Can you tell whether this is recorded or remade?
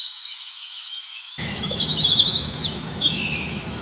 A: remade